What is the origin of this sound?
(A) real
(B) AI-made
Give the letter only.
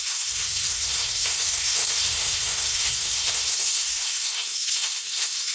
B